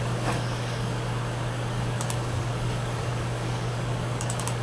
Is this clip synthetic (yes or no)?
yes